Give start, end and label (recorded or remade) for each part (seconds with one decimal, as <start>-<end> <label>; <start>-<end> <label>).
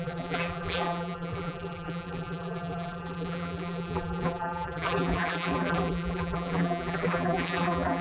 0.0-8.0 remade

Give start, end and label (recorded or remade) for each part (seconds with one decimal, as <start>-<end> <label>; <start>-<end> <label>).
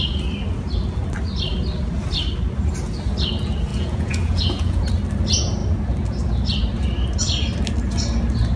0.0-3.7 recorded; 3.7-4.9 remade; 4.9-8.6 recorded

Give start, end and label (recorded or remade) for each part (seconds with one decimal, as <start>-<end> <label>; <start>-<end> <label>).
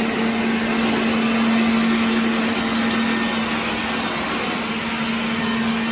0.0-5.9 recorded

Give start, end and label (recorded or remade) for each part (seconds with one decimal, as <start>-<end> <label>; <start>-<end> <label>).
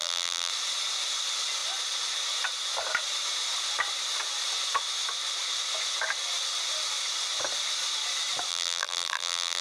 0.0-0.5 remade; 0.5-8.5 recorded; 8.5-9.6 remade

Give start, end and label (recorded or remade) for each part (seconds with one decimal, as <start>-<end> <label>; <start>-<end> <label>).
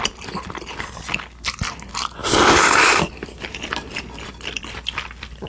0.0-2.2 recorded; 2.2-5.5 remade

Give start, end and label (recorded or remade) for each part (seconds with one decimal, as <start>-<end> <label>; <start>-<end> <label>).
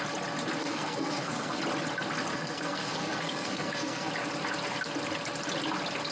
0.0-0.6 recorded; 0.6-1.6 remade; 1.6-2.3 recorded; 2.3-4.1 remade; 4.1-6.1 recorded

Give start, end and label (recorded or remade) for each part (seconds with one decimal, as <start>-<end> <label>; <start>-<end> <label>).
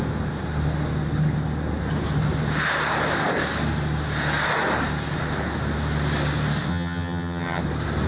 0.0-6.7 recorded; 6.7-7.6 remade; 7.6-8.1 recorded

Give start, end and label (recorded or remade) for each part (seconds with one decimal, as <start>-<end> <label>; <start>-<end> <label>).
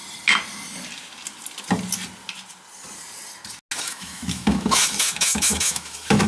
0.0-3.8 recorded; 3.8-6.3 remade